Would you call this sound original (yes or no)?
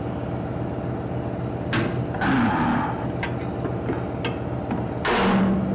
yes